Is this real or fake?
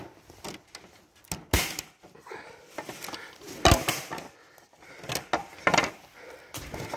real